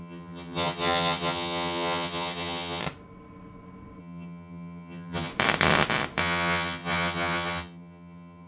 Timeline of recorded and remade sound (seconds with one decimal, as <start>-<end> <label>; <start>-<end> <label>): 0.0-2.8 remade; 2.8-4.0 recorded; 4.0-5.3 remade; 5.3-6.2 recorded; 6.2-8.5 remade